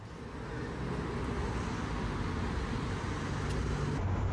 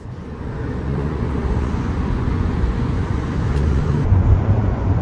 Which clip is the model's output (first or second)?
second